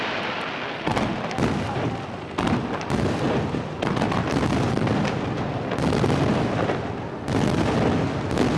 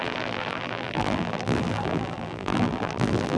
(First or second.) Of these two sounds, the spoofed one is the second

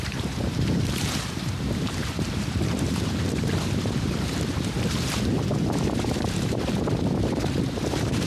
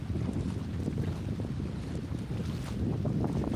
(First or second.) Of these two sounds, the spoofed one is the first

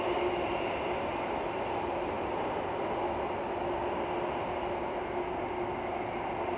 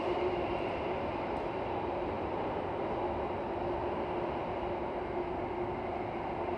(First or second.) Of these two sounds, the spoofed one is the second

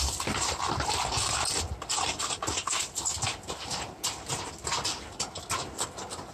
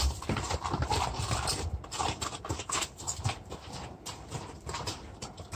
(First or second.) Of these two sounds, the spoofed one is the second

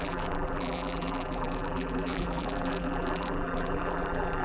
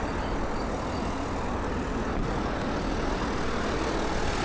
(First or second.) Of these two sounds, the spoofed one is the first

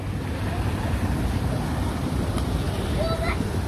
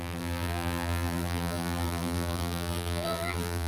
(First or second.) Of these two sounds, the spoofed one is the second